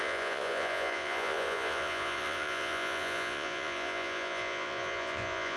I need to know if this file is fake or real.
fake